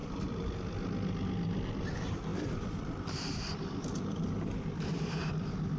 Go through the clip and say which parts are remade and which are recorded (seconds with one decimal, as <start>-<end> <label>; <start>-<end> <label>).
0.0-0.6 remade; 0.6-2.3 recorded; 2.3-5.3 remade; 5.3-5.8 recorded